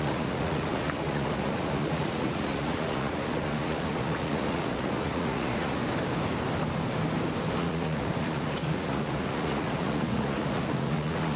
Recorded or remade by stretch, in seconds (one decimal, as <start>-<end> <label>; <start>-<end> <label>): 0.0-5.8 remade; 5.8-7.6 recorded; 7.6-11.4 remade